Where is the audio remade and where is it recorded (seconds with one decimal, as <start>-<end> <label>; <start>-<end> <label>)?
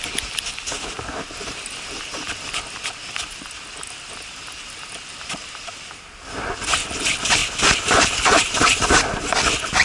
0.0-9.8 recorded